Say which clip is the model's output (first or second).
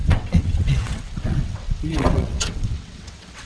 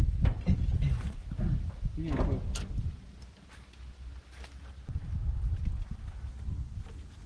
first